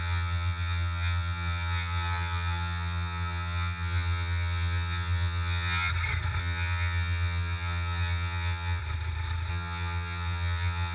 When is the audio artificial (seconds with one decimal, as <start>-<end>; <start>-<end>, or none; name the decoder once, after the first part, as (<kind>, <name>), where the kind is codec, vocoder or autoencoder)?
0.0-5.9 (vocoder, HiFi-GAN); 6.4-8.8; 9.5-10.9